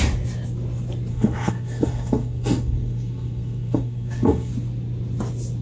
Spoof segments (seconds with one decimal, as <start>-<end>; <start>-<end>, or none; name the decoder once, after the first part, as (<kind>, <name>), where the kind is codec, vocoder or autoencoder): 1.1-4.5 (codec, SNAC)